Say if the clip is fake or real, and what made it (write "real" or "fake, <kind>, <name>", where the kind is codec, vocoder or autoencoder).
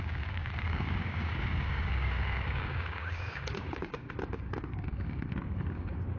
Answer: fake, codec, DAC